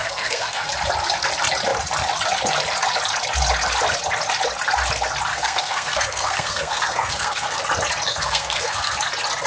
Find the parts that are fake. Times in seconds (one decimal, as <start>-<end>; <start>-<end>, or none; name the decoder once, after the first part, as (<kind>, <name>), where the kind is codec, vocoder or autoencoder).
0.0-0.7 (codec, SNAC); 5.3-7.6; 8.1-8.9